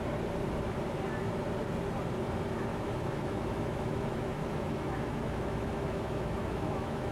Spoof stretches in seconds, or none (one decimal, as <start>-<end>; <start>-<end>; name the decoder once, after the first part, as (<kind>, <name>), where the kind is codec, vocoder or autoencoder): 2.7-7.1 (autoencoder, DAC-VAE)

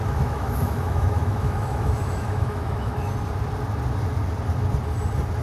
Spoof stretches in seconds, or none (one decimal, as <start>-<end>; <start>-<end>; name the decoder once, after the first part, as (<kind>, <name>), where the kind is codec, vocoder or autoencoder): 0.0-3.1 (autoencoder, DAC-VAE)

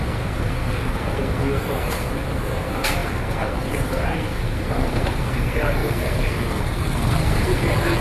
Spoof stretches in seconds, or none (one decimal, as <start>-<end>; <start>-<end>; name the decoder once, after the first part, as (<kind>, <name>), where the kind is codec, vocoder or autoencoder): 0.0-8.0 (codec, SNAC)

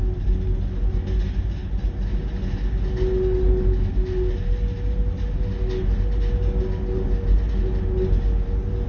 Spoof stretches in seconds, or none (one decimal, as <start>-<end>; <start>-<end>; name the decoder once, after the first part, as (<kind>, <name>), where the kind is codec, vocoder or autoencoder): none